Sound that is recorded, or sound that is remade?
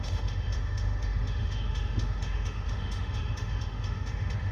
remade